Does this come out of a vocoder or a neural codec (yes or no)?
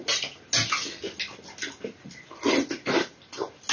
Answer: no